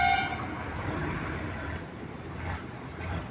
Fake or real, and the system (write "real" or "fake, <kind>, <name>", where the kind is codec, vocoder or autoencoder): real